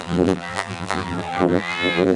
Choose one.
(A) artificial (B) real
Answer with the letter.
A